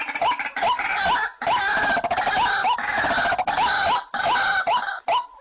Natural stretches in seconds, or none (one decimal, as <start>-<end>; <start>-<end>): 0.0-5.4